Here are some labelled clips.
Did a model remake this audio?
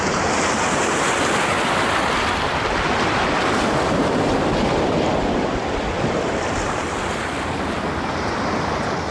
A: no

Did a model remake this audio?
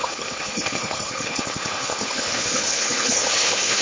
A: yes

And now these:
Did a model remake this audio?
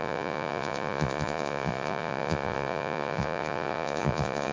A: yes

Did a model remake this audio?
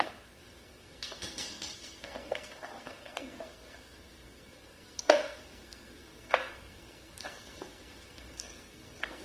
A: yes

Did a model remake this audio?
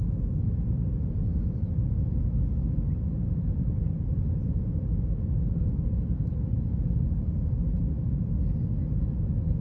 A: no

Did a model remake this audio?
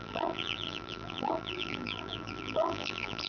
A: yes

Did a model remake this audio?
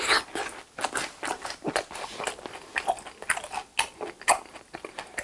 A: no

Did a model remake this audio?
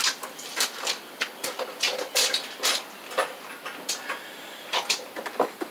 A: yes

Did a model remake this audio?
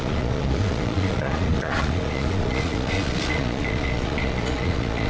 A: yes